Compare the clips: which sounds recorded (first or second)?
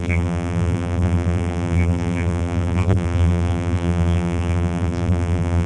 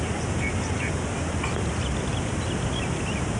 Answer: second